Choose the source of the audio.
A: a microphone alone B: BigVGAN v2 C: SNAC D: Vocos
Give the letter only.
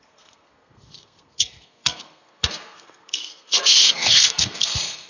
C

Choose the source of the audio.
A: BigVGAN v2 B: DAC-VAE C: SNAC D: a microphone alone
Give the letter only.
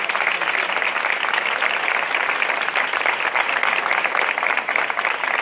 D